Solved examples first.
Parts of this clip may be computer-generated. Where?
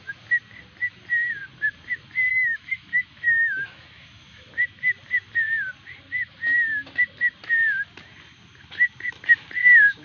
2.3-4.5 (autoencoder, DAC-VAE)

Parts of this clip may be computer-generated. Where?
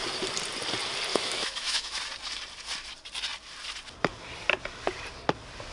1.1-2.0 (autoencoder, DAC-VAE)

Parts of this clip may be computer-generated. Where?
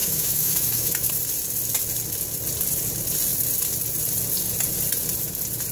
0.0-1.1 (autoencoder, DAC-VAE)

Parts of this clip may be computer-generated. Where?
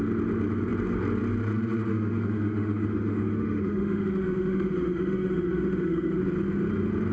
1.9-6.2 (autoencoder, DAC-VAE)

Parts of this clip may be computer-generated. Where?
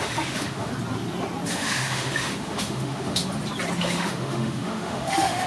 0.0-0.7 (autoencoder, DAC-VAE); 1.5-3.2; 3.8-5.5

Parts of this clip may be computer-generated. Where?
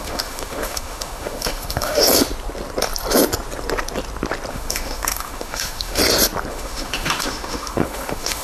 0.0-2.0 (autoencoder, DAC-VAE); 4.5-6.0; 6.5-8.4